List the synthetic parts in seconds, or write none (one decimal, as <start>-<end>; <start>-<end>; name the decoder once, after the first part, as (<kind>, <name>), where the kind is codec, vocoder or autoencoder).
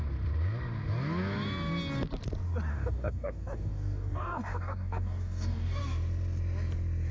2.7-5.8 (codec, DAC)